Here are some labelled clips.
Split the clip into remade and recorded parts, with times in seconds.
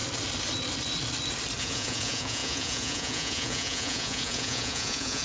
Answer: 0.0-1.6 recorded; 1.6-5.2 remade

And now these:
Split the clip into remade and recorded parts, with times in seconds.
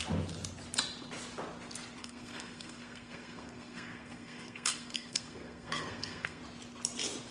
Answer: 0.0-2.0 recorded; 2.0-6.4 remade; 6.4-7.3 recorded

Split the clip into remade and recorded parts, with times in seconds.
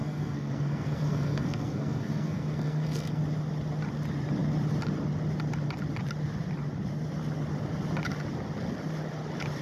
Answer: 0.0-3.2 remade; 3.2-9.6 recorded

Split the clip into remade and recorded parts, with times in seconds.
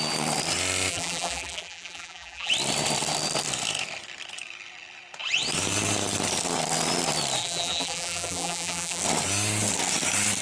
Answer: 0.0-0.9 recorded; 0.9-2.5 remade; 2.5-7.4 recorded; 7.4-9.0 remade; 9.0-10.4 recorded